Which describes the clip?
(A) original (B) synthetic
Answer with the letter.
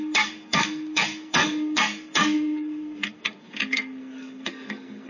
B